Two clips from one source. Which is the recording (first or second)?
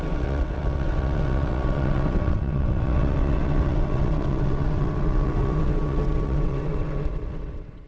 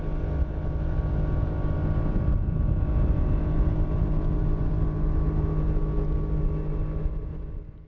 second